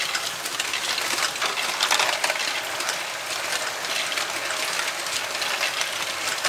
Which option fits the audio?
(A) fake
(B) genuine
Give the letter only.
B